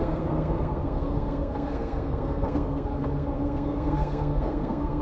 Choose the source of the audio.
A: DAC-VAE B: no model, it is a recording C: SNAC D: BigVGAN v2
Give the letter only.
C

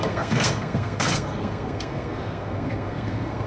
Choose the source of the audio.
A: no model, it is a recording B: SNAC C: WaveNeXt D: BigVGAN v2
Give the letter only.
B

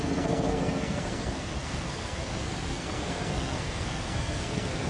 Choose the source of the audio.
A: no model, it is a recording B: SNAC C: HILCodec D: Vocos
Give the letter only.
B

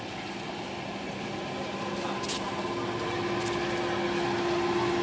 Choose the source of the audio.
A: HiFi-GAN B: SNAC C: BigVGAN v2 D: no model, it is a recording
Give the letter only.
D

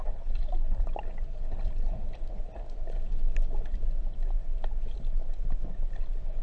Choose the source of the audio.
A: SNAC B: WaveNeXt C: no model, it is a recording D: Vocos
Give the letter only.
C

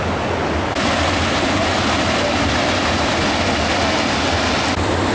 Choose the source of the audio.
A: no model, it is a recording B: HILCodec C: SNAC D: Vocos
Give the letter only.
A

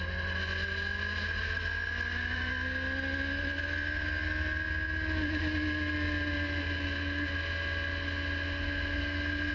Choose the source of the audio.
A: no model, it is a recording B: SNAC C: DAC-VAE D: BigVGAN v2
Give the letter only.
A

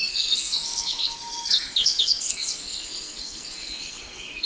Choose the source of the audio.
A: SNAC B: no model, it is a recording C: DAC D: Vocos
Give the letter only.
A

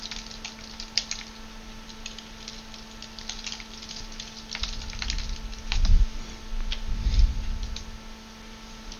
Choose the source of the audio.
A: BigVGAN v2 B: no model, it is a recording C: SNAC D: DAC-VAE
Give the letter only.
B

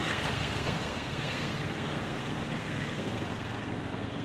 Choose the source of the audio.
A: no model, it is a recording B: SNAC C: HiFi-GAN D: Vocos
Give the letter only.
B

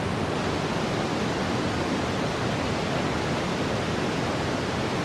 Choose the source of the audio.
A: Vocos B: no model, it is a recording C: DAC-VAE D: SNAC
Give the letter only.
B